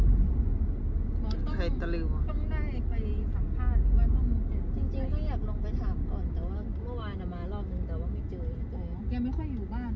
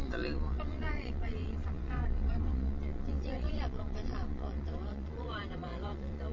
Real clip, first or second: first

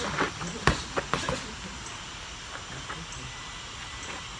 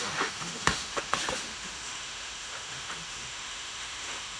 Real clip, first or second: first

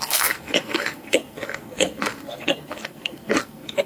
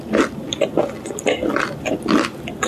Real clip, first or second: second